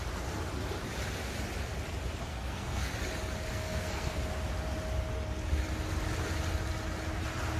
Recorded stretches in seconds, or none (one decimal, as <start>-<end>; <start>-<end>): 0.0-2.3; 2.9-3.5; 4.3-7.6